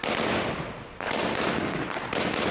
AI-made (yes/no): no